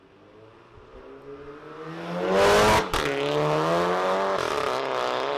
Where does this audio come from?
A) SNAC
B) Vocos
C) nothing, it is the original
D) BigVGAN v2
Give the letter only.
C